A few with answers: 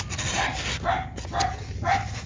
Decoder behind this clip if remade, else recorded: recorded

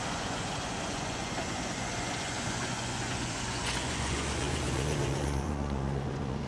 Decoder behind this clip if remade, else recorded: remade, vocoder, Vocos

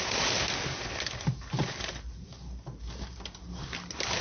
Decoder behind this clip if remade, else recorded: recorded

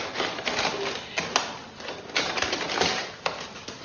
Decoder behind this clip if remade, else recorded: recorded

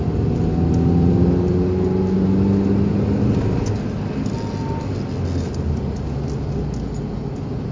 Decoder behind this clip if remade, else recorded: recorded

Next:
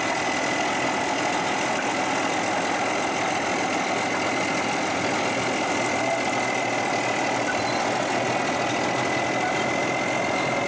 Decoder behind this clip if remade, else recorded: recorded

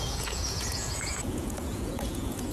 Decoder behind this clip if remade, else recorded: remade, vocoder, Vocos